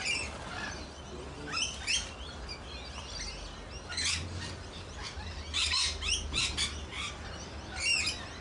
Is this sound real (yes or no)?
yes